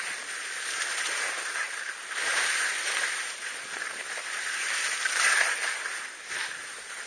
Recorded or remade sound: recorded